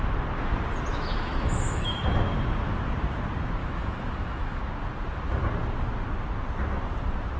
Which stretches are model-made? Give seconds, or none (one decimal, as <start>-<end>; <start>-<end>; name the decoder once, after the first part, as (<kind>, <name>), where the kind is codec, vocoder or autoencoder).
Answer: 0.9-2.0 (autoencoder, DAC-VAE); 3.6-4.6